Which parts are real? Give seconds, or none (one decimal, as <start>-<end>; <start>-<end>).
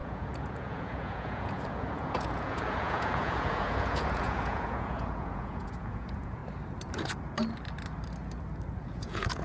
6.4-8.8